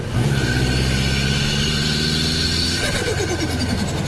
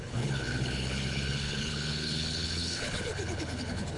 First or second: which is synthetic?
second